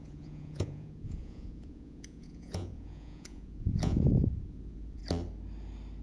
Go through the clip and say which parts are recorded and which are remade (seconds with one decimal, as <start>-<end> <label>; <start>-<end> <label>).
0.0-5.0 remade; 5.0-6.0 recorded